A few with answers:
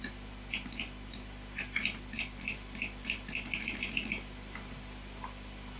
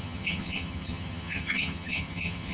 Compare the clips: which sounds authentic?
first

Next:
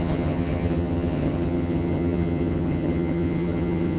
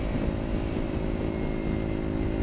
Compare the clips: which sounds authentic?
second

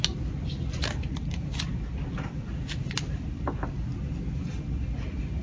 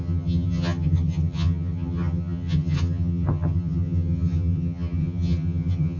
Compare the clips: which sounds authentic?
first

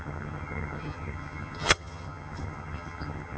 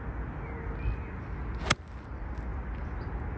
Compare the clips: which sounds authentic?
second